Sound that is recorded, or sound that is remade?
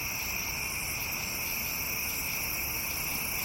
recorded